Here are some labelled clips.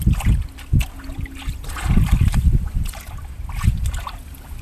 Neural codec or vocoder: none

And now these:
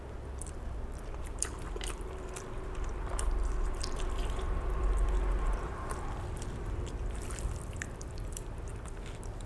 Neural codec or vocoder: vocoder, BigVGAN v2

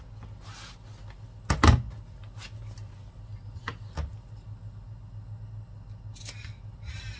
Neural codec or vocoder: none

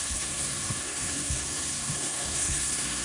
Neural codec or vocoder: codec, SNAC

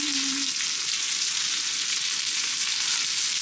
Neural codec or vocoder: none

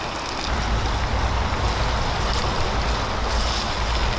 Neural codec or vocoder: none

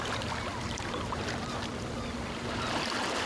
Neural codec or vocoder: none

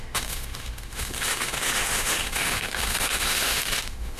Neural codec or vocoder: autoencoder, DAC-VAE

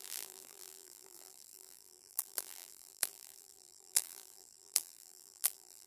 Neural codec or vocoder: vocoder, BigVGAN v2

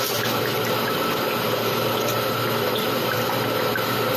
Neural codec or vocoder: none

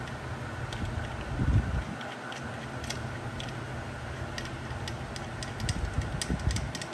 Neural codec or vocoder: none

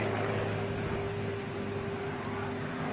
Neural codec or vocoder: none